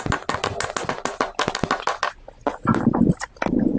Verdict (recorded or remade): recorded